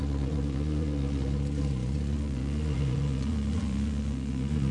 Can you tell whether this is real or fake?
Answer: fake